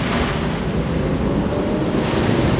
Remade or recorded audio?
recorded